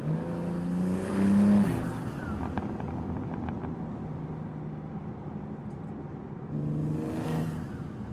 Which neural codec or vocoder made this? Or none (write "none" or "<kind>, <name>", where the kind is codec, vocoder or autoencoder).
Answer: none